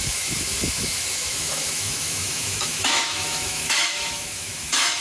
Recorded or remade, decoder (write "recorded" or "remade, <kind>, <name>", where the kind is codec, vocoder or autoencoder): remade, autoencoder, DAC-VAE